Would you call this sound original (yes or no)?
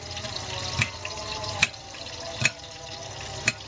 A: yes